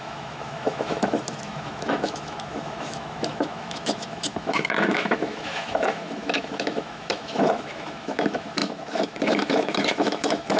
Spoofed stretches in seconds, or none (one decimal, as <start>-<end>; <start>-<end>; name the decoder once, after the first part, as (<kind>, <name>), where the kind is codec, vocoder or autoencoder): 0.0-10.6 (autoencoder, DAC-VAE)